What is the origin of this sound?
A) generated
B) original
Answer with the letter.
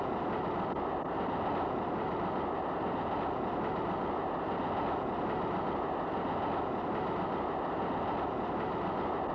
B